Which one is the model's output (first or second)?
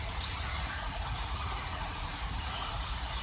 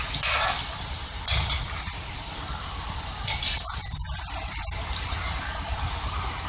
first